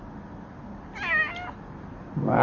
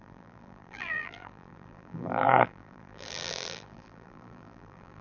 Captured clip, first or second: first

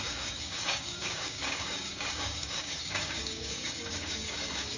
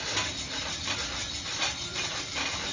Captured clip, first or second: second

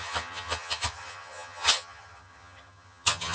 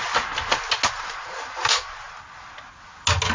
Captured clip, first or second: second